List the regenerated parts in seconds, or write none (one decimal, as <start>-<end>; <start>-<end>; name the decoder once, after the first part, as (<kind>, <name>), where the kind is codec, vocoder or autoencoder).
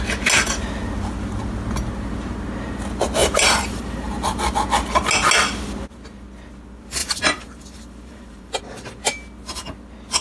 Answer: 3.2-4.4 (vocoder, BigVGAN v2); 7.0-8.6